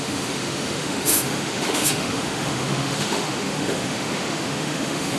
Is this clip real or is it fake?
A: fake